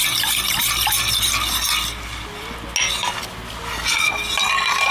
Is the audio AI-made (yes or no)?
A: no